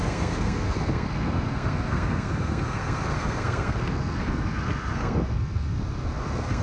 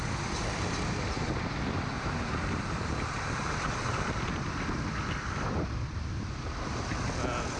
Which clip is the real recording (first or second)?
second